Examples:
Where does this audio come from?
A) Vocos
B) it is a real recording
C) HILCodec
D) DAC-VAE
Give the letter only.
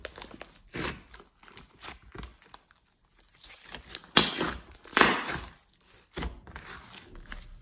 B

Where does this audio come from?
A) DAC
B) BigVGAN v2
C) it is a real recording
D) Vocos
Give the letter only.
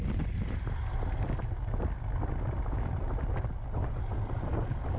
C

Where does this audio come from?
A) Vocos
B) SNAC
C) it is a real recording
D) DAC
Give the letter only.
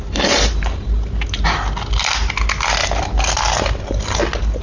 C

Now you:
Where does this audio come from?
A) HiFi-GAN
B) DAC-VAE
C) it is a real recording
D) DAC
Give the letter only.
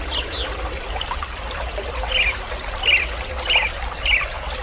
C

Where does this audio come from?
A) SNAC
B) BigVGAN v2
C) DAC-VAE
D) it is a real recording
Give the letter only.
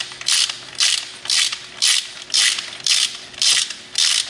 B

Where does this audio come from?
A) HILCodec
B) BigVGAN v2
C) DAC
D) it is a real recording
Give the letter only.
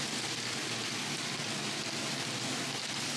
D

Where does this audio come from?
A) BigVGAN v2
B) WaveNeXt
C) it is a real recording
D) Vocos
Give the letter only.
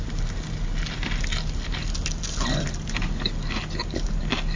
C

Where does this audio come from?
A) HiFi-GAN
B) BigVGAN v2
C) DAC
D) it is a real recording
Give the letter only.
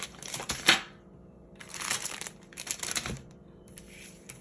B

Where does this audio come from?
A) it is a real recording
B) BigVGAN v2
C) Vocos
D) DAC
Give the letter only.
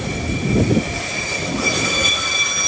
A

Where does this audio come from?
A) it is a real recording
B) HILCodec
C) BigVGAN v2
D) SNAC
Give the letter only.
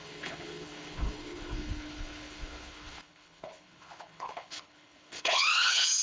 B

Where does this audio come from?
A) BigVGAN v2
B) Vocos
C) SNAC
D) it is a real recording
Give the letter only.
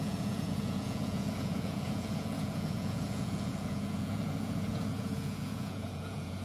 B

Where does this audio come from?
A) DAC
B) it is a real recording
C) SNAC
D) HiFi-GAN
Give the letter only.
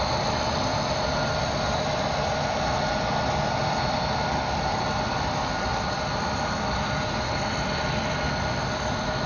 B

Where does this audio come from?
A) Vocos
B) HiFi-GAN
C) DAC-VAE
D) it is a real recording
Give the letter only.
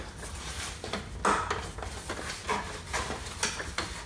D